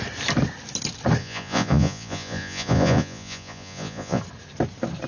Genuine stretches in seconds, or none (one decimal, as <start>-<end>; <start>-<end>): 0.0-1.2; 4.2-5.1